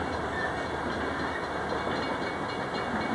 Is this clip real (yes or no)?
yes